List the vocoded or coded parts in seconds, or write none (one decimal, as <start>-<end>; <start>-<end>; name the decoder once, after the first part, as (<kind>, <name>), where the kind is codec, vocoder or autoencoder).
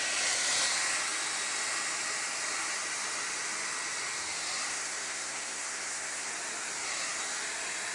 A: 4.7-6.3 (codec, SNAC)